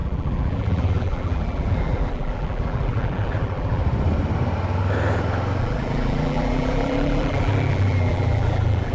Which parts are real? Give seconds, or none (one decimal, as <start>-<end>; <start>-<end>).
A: 3.8-5.6